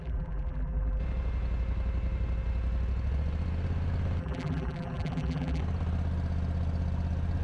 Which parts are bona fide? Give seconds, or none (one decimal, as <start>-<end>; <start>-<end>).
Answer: 1.0-4.2; 5.6-7.4